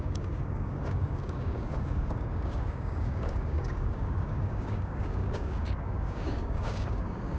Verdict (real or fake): fake